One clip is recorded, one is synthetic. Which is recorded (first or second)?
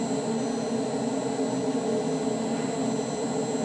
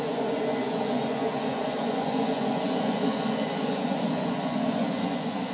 first